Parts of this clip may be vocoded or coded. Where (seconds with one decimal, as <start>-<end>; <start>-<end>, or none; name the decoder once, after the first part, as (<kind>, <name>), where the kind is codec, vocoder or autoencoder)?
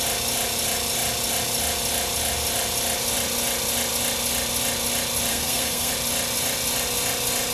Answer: 5.3-5.9 (codec, SNAC)